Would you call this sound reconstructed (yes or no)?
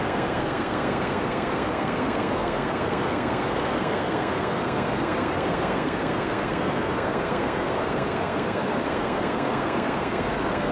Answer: yes